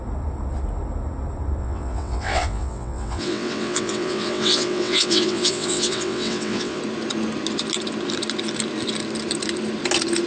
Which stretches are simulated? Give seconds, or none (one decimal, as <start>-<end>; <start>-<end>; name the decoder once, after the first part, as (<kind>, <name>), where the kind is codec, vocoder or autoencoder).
1.6-6.8 (vocoder, WaveNeXt)